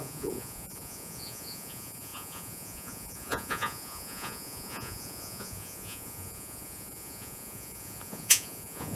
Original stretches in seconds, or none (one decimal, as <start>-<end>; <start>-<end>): none